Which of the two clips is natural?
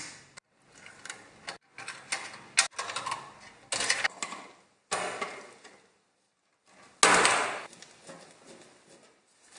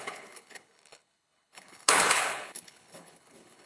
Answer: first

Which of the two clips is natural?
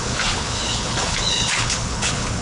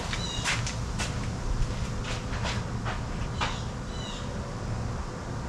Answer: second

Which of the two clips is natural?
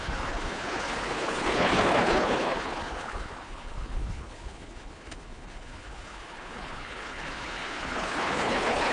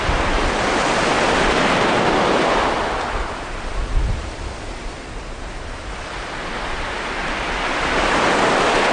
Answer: second